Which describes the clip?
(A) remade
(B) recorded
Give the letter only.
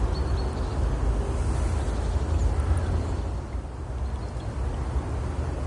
B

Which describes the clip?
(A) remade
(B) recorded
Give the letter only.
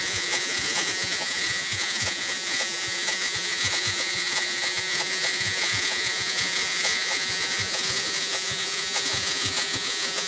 A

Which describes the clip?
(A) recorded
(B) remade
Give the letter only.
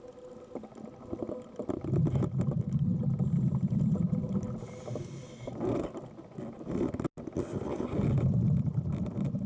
A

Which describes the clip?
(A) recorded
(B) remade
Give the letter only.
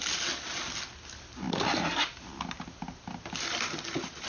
A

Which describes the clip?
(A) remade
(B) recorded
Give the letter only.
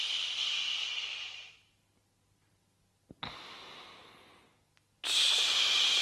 B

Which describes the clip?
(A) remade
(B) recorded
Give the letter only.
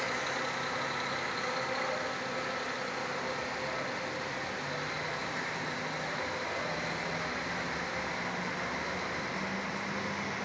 B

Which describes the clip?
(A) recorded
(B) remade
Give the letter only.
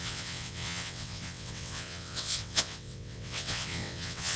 B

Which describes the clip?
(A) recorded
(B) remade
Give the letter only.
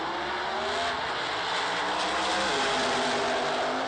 A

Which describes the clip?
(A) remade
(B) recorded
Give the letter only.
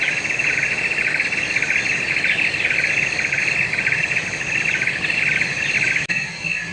B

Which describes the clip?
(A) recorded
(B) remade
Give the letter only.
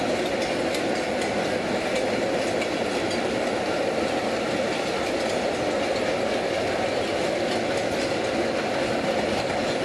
A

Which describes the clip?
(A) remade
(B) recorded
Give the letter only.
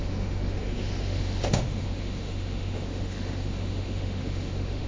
A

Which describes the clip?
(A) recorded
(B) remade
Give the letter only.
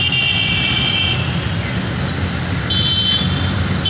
A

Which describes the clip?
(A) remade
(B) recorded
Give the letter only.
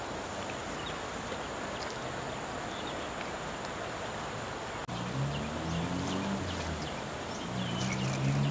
B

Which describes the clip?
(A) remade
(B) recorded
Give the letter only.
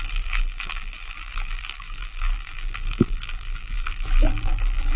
A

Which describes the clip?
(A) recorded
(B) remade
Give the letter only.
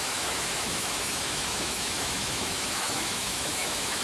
B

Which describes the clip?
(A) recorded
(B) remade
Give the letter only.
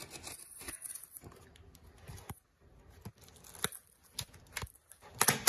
A